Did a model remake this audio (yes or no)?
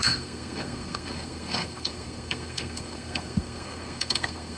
yes